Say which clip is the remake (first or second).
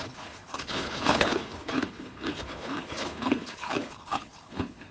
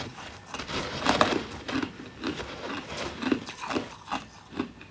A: first